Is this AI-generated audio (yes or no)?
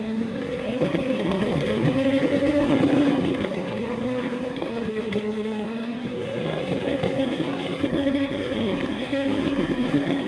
yes